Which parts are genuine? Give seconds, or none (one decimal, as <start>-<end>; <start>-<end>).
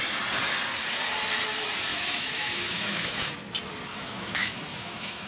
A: 0.0-1.9; 3.3-3.9